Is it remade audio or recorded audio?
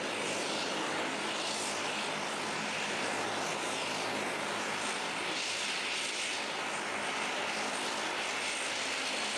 recorded